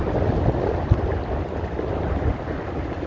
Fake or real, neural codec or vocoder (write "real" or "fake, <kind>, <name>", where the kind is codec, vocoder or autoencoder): real